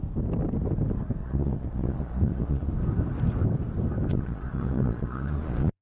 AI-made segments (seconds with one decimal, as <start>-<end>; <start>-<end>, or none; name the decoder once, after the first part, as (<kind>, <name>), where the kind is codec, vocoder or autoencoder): 1.2-2.7 (vocoder, Vocos); 4.1-5.8